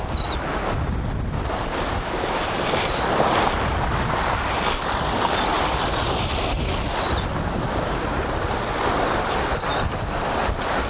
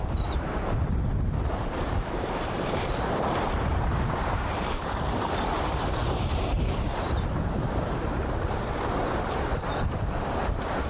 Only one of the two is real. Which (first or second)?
first